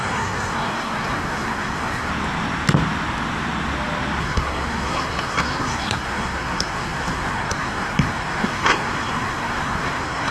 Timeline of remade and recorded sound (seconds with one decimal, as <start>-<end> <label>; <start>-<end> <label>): 0.0-2.1 remade; 2.1-4.2 recorded; 4.2-10.3 remade